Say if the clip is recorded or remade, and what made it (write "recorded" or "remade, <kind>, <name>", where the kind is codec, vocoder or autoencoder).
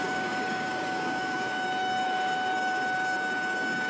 remade, codec, DAC